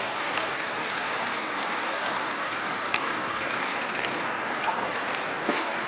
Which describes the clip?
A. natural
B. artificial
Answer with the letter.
B